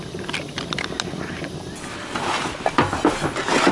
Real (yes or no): yes